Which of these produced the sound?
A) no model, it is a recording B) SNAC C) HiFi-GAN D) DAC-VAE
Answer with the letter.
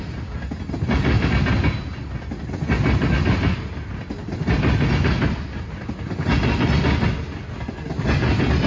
A